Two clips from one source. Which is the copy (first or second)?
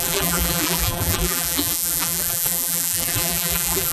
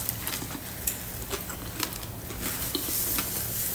first